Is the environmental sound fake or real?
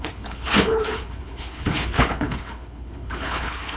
fake